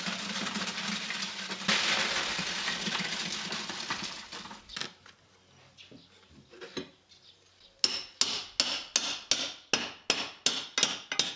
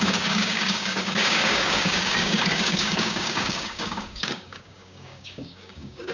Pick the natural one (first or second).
first